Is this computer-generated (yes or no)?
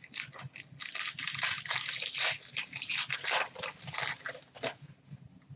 yes